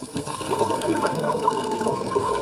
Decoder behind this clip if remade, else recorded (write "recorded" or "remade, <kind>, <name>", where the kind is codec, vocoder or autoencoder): remade, codec, SNAC